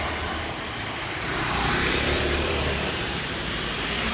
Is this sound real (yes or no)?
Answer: no